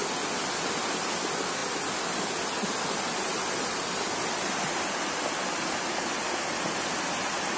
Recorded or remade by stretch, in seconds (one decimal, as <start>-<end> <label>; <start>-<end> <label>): 0.0-7.6 recorded